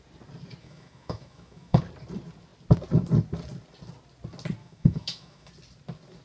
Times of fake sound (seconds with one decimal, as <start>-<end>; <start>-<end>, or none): 0.6-1.8; 4.6-5.5

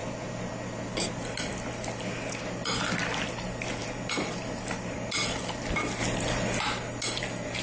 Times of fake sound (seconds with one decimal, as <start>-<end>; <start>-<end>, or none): none

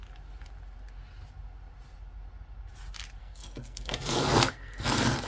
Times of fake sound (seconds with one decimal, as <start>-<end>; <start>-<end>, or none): 3.2-5.3

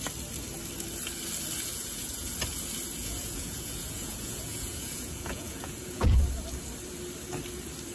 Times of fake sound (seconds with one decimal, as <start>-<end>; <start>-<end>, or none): 1.7-2.3; 3.0-6.2

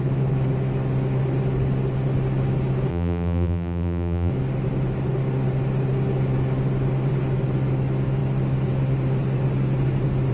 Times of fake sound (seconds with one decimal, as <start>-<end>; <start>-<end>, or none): 2.9-4.3

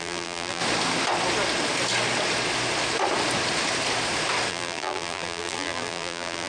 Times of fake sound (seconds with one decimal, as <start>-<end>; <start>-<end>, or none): 0.0-0.6; 4.5-6.5